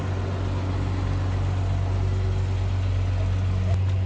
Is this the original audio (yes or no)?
yes